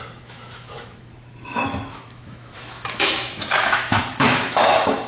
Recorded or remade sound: remade